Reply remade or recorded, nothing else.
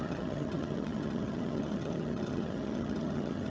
remade